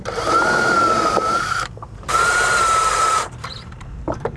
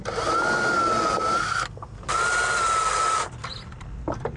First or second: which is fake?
first